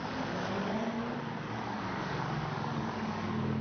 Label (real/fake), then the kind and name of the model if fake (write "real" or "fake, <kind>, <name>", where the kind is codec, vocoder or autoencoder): fake, codec, DAC